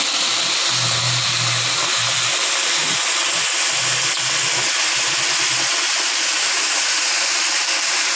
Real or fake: real